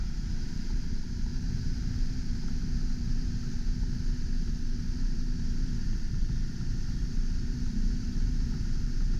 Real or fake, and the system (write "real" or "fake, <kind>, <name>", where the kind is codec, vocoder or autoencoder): fake, vocoder, BigVGAN v2